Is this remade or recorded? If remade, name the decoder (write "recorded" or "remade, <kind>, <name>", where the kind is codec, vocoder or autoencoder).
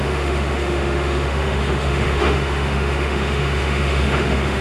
remade, autoencoder, DAC-VAE